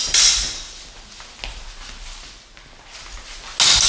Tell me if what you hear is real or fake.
real